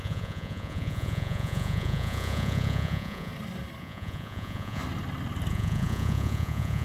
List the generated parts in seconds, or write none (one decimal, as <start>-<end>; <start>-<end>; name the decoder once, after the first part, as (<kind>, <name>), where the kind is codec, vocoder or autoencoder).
0.0-3.3 (vocoder, Vocos); 3.8-4.8; 5.5-6.8

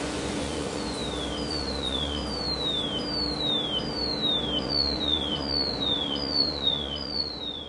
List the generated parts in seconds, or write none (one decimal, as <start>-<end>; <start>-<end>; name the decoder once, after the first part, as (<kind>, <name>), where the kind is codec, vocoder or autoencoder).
0.0-1.0 (vocoder, Vocos); 1.5-2.2; 4.6-7.7